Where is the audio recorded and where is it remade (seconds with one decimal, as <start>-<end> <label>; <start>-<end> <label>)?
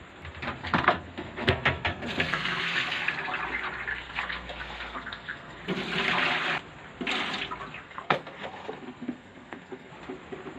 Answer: 0.0-0.6 recorded; 0.6-3.1 remade; 3.1-3.9 recorded; 3.9-5.6 remade; 5.6-7.8 recorded; 7.8-9.9 remade; 9.9-10.6 recorded